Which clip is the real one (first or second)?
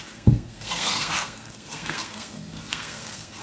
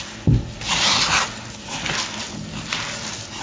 second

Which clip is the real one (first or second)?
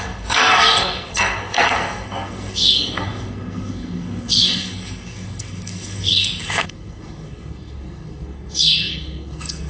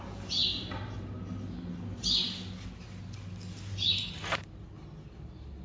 second